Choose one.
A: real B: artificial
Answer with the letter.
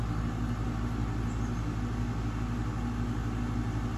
A